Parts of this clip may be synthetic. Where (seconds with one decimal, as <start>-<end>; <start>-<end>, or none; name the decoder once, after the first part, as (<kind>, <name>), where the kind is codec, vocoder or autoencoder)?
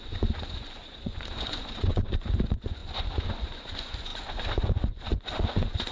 0.0-5.9 (vocoder, Vocos)